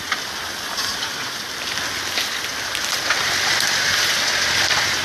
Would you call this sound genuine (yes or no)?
yes